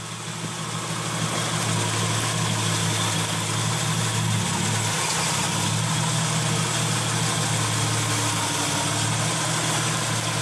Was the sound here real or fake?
real